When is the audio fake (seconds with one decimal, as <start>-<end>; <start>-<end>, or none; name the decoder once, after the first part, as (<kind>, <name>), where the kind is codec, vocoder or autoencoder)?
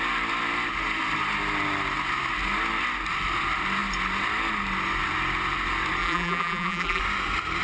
6.0-7.0 (vocoder, BigVGAN v2)